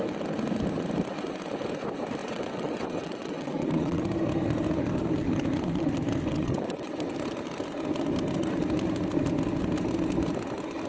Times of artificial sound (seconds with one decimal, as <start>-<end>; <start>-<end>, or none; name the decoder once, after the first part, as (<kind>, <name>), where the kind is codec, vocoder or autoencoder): 2.2-4.0 (vocoder, WaveNeXt); 6.3-7.1